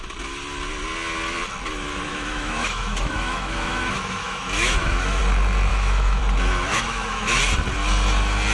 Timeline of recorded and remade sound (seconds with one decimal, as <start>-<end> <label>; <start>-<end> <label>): 0.0-2.1 recorded; 2.1-5.2 remade; 5.2-5.7 recorded; 5.7-6.2 remade; 6.2-6.7 recorded; 6.7-7.4 remade; 7.4-8.5 recorded